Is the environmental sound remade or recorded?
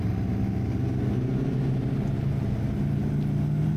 recorded